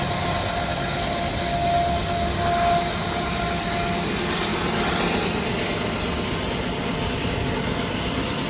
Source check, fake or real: real